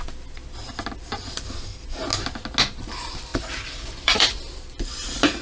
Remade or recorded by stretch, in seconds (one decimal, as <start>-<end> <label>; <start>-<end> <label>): 0.0-3.3 recorded; 3.3-4.8 remade; 4.8-5.4 recorded

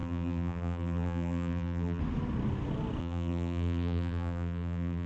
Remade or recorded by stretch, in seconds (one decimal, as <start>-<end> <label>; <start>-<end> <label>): 0.0-2.0 remade; 2.0-3.0 recorded; 3.0-5.1 remade

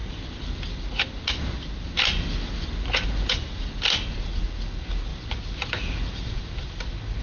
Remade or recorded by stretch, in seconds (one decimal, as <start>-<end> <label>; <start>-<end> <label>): 0.0-7.2 recorded

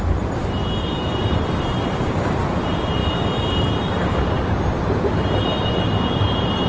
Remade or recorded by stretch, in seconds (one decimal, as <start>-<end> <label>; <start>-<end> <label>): 0.0-0.4 remade; 0.4-1.0 recorded; 1.0-6.7 remade